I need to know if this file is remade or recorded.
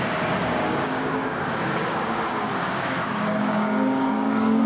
remade